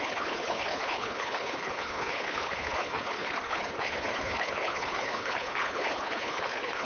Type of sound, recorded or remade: remade